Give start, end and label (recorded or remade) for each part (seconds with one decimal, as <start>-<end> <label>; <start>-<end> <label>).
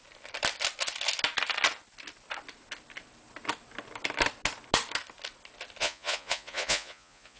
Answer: 0.0-5.8 recorded; 5.8-7.4 remade